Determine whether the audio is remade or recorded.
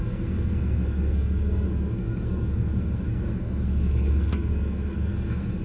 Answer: remade